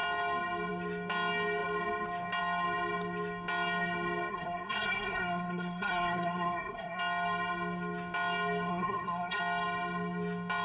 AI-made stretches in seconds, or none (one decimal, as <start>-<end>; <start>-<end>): 4.3-7.0; 8.7-9.4